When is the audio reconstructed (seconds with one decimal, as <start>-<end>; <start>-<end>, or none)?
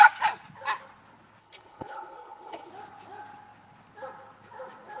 1.4-2.7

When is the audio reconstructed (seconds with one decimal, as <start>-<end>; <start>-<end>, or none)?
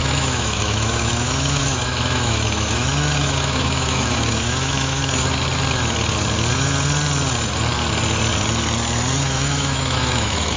0.0-5.0; 9.2-10.6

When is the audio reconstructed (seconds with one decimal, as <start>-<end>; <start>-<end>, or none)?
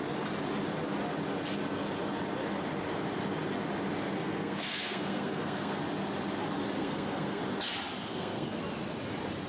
4.2-5.8; 6.8-7.4; 8.0-8.6